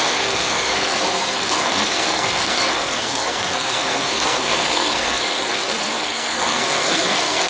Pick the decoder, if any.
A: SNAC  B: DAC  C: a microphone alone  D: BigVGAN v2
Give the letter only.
A